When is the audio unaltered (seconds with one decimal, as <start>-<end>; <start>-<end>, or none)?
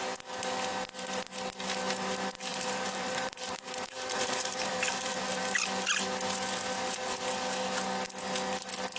0.0-2.5; 5.4-9.0